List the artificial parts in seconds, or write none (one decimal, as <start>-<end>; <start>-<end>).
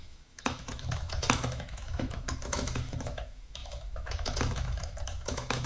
0.0-5.7